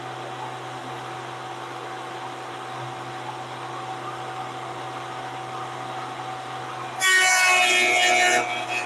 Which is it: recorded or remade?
recorded